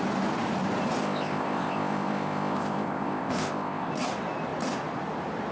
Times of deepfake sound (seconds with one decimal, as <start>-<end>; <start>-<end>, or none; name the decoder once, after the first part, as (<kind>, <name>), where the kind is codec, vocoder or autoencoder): 1.0-3.9 (codec, ZipCodec)